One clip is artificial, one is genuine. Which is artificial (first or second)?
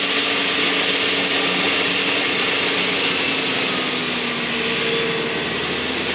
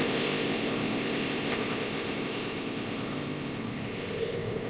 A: second